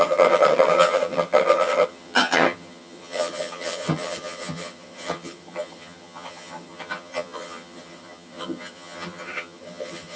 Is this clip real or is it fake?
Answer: fake